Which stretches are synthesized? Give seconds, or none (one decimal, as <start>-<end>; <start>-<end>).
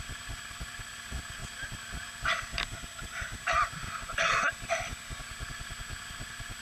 0.0-1.4; 4.7-6.6